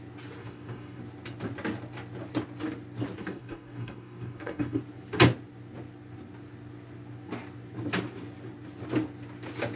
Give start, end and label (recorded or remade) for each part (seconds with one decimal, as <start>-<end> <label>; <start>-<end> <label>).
0.0-0.4 recorded; 0.4-1.0 remade; 1.0-3.2 recorded; 3.2-4.8 remade; 4.8-9.8 recorded